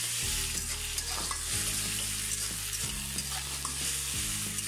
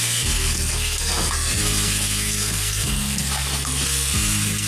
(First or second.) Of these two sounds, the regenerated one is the second